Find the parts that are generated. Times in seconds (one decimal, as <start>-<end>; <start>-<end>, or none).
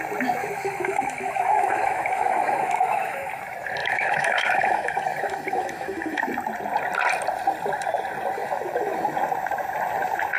0.4-3.4; 3.8-6.2